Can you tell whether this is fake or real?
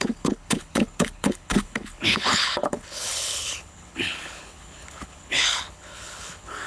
fake